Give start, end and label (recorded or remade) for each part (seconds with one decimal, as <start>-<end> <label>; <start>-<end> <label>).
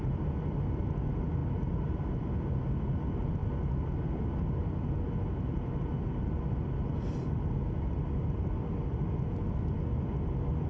0.0-10.7 recorded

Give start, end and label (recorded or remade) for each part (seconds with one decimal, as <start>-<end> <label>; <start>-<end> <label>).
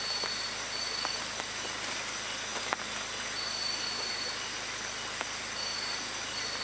0.0-6.6 recorded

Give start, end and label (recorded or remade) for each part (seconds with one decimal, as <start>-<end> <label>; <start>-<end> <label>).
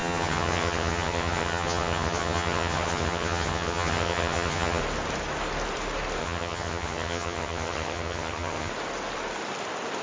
0.0-4.8 remade; 4.8-6.2 recorded; 6.2-8.7 remade; 8.7-10.0 recorded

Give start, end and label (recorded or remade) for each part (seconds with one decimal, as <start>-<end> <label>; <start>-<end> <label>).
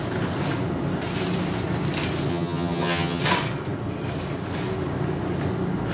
0.0-2.3 recorded; 2.3-3.2 remade; 3.2-5.9 recorded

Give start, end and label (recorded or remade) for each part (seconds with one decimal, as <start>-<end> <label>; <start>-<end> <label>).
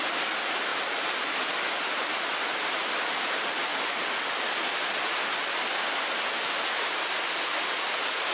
0.0-8.3 recorded